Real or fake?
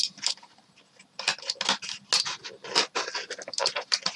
real